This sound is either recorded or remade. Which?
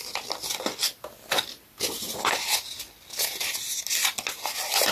recorded